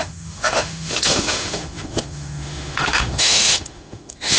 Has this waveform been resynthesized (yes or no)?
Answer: yes